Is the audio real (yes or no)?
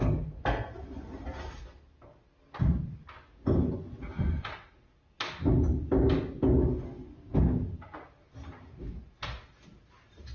yes